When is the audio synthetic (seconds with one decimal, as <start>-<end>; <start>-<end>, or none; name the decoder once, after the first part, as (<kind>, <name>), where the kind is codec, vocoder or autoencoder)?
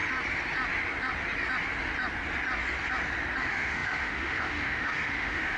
3.4-5.6 (autoencoder, DAC-VAE)